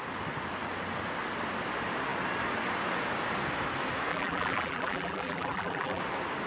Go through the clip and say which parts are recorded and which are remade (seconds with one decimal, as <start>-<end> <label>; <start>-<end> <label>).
0.0-4.1 recorded; 4.1-6.0 remade; 6.0-6.5 recorded